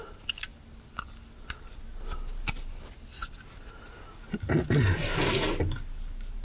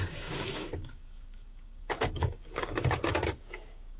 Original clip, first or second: first